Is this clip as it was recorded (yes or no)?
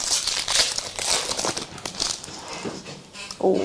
no